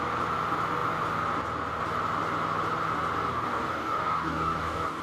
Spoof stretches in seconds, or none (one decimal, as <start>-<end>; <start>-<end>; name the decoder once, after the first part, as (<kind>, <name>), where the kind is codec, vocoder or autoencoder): 3.3-5.0 (codec, DAC)